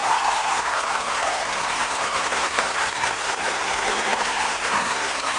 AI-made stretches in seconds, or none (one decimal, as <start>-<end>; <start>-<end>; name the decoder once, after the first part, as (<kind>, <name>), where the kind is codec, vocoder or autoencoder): 0.0-5.4 (codec, SNAC)